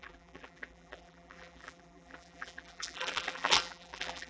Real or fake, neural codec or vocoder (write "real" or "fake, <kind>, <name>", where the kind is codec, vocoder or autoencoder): fake, vocoder, BigVGAN v2